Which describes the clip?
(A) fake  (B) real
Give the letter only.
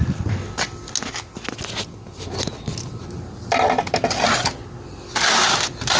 B